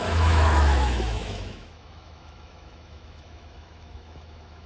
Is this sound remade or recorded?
remade